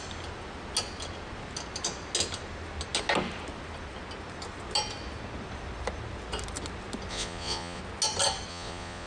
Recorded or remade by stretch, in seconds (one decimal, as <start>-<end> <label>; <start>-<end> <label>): 0.0-7.1 recorded; 7.1-7.8 remade; 7.8-8.5 recorded; 8.5-9.1 remade